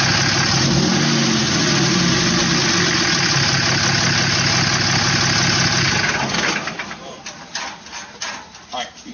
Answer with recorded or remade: recorded